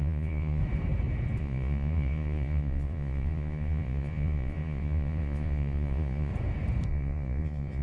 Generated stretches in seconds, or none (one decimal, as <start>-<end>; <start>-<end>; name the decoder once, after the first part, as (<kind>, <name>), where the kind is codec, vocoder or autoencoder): 0.0-0.6 (vocoder, Vocos); 1.4-6.3; 6.9-7.8